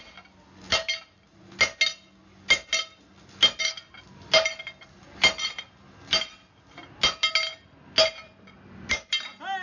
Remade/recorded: recorded